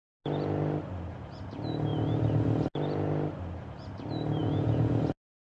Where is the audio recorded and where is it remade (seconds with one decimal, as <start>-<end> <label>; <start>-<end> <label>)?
0.0-4.4 recorded; 4.4-5.0 remade; 5.0-5.5 recorded